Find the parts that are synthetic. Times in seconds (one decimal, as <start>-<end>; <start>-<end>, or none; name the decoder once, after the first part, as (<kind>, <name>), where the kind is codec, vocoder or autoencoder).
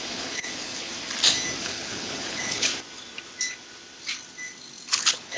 0.0-0.9 (codec, HILCodec); 1.6-2.7; 4.9-5.4